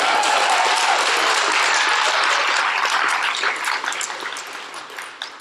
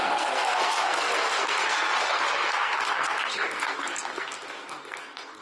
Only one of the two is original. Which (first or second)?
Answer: first